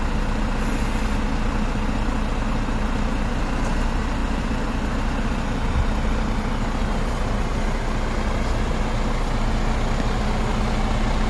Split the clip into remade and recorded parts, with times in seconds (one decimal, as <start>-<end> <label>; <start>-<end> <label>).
0.0-11.3 recorded